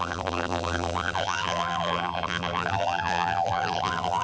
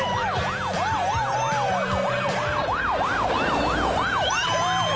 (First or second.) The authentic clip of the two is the second